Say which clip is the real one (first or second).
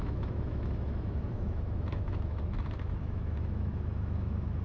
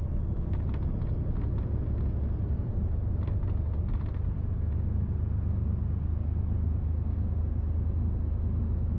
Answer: second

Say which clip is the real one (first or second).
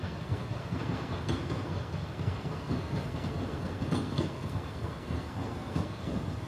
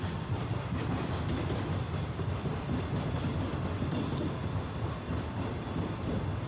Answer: second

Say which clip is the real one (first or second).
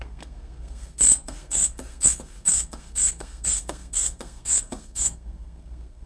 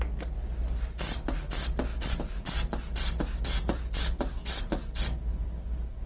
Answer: second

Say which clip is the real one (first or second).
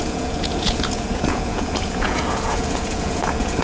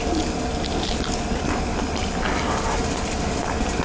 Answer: second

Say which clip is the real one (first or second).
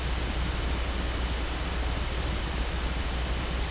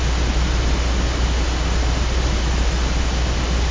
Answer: second